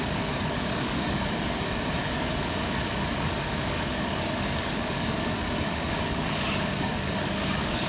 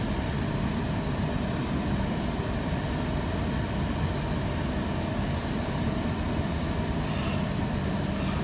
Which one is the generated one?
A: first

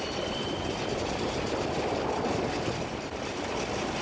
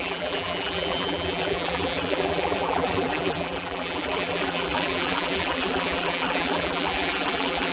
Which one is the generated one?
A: second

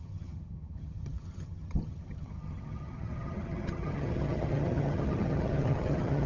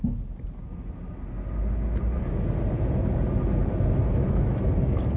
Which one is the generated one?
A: first